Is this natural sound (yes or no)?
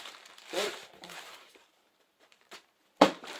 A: no